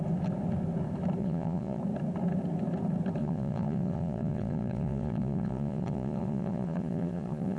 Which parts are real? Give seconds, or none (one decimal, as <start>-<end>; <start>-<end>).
0.0-1.2; 1.8-3.2